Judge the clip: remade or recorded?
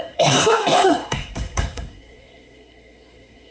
remade